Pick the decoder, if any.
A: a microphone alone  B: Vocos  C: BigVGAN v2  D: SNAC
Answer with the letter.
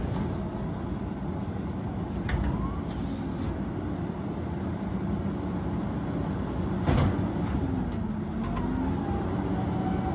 A